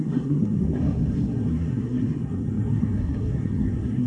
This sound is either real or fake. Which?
fake